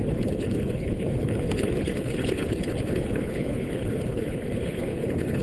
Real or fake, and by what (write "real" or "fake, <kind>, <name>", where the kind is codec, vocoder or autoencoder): fake, codec, HILCodec